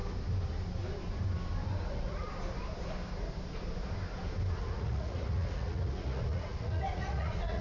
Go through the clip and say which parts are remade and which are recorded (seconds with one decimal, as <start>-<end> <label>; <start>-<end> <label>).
0.0-1.9 recorded; 1.9-2.3 remade; 2.3-4.6 recorded; 4.6-7.6 remade